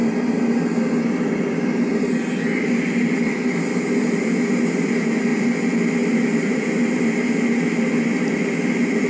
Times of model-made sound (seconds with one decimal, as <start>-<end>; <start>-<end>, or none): 5.3-7.0